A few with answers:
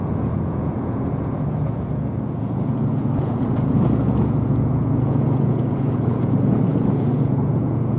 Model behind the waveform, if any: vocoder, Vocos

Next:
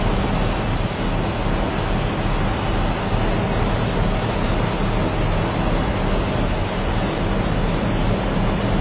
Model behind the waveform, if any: none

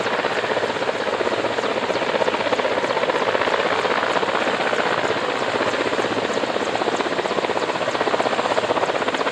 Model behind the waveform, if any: none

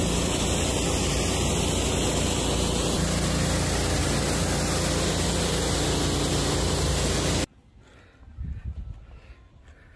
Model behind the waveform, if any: none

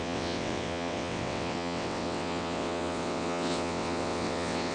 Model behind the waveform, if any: vocoder, WaveNeXt